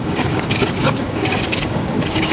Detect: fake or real fake